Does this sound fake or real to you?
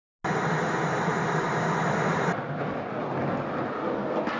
real